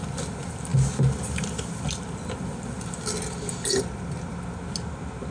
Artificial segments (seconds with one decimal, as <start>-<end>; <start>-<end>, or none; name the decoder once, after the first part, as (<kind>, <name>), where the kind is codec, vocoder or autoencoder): none